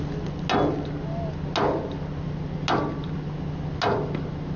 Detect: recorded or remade recorded